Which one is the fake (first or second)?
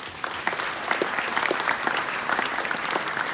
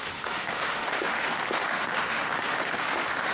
second